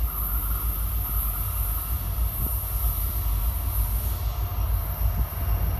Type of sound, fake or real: real